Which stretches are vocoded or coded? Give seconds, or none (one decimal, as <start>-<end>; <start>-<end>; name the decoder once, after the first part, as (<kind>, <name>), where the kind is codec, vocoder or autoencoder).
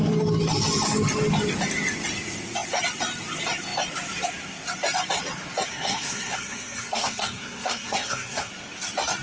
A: 5.7-8.5 (codec, SNAC)